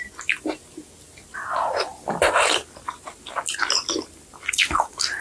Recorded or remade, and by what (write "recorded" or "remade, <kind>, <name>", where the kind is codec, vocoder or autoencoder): recorded